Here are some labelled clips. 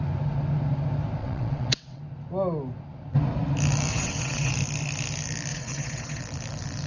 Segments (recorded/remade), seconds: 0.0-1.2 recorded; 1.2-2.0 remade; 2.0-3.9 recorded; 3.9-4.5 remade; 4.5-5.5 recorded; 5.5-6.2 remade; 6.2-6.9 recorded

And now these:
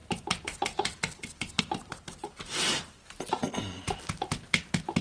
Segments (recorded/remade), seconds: 0.0-5.0 recorded